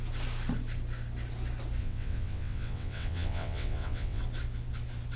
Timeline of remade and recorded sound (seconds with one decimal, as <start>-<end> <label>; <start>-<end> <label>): 0.0-1.8 recorded; 1.8-4.2 remade; 4.2-5.2 recorded